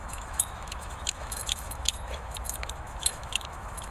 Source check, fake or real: fake